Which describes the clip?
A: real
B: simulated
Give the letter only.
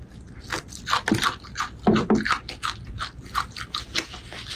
A